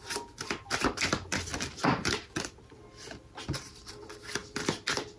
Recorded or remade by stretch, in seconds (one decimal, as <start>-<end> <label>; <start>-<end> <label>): 0.0-1.5 recorded; 1.5-3.9 remade; 3.9-4.4 recorded; 4.4-5.2 remade

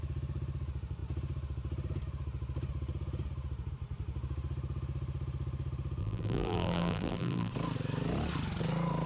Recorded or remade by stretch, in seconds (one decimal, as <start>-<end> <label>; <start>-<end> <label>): 0.0-6.0 recorded; 6.0-7.5 remade; 7.5-9.1 recorded

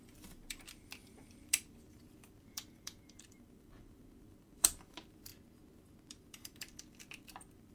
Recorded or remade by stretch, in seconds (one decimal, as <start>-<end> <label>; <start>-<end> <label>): 0.0-5.3 remade; 5.3-6.1 recorded; 6.1-7.7 remade

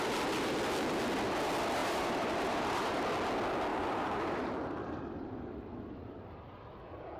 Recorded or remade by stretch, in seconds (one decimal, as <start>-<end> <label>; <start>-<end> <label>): 0.0-1.8 recorded; 1.8-3.0 remade; 3.0-3.7 recorded; 3.7-4.5 remade; 4.5-7.2 recorded

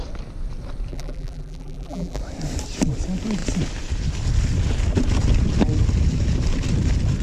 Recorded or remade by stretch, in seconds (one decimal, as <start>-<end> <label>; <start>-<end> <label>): 0.0-0.9 recorded; 0.9-2.2 remade; 2.2-7.2 recorded

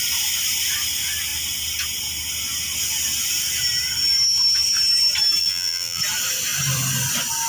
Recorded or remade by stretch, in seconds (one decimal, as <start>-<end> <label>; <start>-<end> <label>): 0.0-5.4 recorded; 5.4-6.0 remade; 6.0-7.5 recorded

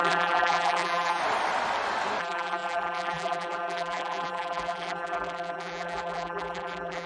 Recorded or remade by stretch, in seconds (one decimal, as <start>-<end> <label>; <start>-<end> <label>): 0.0-1.2 remade; 1.2-2.2 recorded; 2.2-7.1 remade

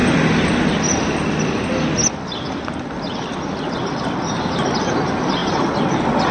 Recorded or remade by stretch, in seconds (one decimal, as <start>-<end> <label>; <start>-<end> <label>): 0.0-6.3 recorded